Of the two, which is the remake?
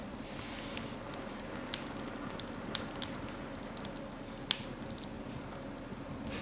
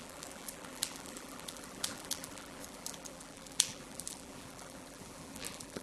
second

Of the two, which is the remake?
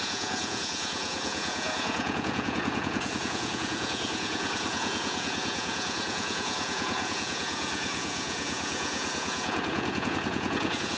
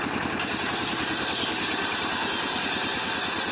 first